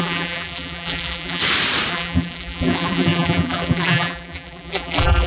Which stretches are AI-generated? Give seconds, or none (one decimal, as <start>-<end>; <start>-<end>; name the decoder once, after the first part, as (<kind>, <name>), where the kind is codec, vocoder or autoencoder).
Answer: 0.0-1.4 (vocoder, BigVGAN v2); 1.9-5.3